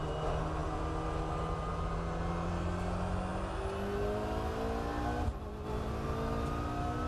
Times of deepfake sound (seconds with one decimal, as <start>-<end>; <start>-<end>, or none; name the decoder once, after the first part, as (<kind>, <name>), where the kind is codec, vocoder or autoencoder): none